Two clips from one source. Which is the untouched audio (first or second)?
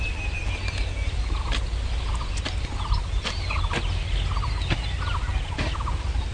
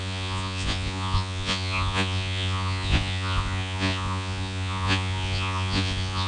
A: first